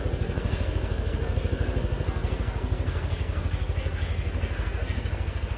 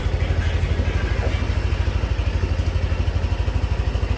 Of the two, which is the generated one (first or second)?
first